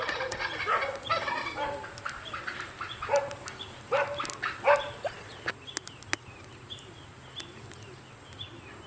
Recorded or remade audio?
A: recorded